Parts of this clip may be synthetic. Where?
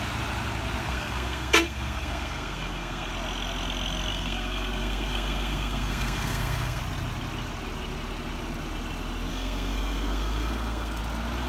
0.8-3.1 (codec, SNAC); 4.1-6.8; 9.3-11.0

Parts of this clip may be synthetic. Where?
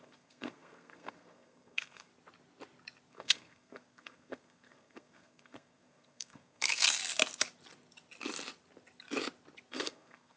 0.0-2.1 (codec, SNAC); 3.1-7.0; 9.7-10.4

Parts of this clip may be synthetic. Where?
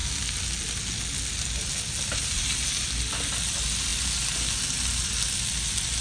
none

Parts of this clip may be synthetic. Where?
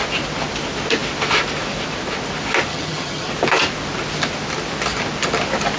2.7-3.3 (vocoder, HiFi-GAN)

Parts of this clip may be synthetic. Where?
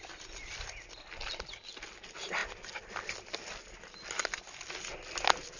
none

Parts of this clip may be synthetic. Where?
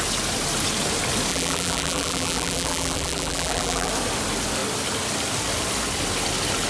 1.3-3.9 (vocoder, BigVGAN v2)